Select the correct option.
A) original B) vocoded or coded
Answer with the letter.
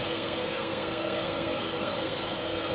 B